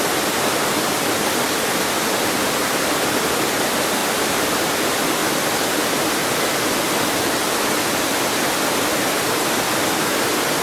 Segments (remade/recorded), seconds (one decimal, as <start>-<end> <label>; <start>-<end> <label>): 0.0-4.0 recorded; 4.0-4.6 remade; 4.6-10.6 recorded